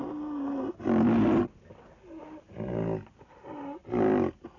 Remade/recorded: recorded